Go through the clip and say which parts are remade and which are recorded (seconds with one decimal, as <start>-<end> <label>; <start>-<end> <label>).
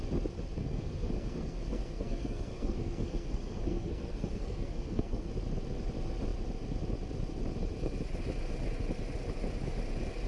0.0-0.6 recorded; 0.6-5.3 remade; 5.3-10.3 recorded